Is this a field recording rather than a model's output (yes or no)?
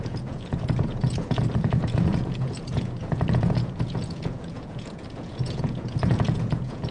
no